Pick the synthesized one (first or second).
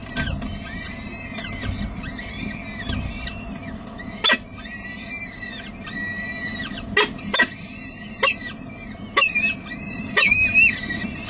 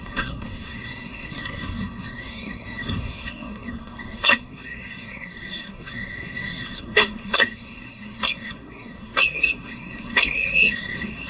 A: second